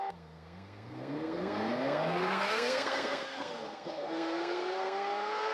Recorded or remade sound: remade